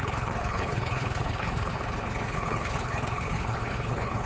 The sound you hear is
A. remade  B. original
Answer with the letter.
A